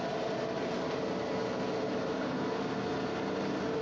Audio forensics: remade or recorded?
recorded